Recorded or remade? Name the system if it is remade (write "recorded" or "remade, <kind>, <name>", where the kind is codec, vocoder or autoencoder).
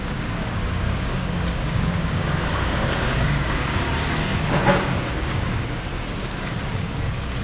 remade, codec, DAC